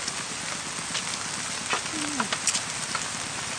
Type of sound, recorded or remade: recorded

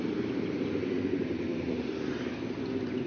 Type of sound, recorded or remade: recorded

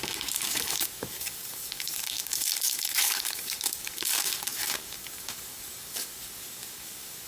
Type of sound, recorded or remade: remade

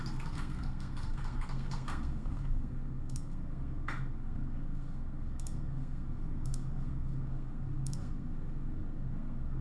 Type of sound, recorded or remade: remade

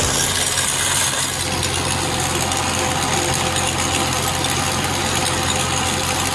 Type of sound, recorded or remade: recorded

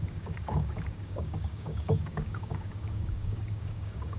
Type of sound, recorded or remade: remade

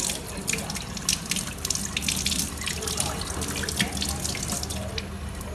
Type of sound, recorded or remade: recorded